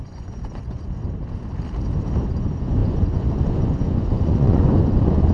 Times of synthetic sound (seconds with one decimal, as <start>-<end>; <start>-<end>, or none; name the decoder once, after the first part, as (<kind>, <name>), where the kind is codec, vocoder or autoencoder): 0.0-1.0 (vocoder, Vocos); 2.4-5.3